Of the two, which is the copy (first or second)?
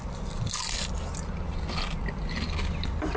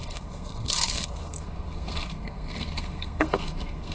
second